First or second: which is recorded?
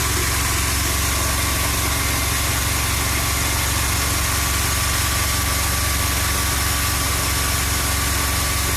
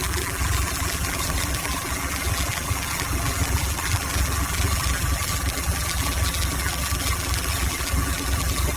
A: first